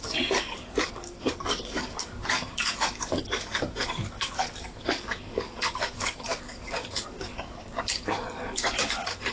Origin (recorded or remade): remade